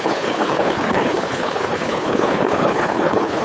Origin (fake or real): fake